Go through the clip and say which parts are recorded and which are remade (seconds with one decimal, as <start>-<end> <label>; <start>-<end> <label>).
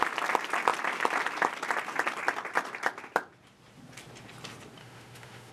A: 0.0-4.8 recorded; 4.8-5.5 remade